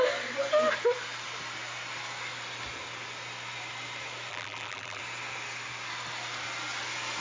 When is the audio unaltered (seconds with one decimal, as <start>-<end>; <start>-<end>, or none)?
0.0-4.3; 5.0-7.2